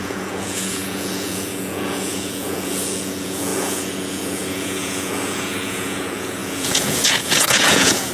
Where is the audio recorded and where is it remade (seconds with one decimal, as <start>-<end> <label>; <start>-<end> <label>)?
0.0-8.1 remade